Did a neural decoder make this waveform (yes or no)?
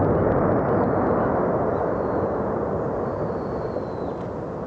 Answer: no